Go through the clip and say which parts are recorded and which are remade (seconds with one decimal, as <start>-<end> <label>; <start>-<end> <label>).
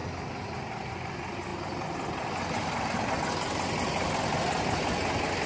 0.0-5.5 recorded